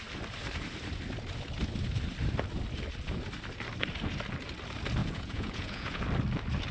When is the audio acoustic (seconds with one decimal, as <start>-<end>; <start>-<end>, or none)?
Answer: 0.0-5.0; 6.0-6.7